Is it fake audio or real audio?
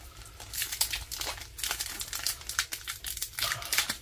fake